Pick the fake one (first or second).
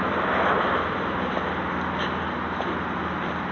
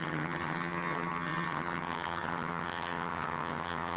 second